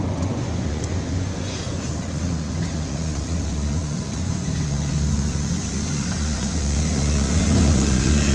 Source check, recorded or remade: remade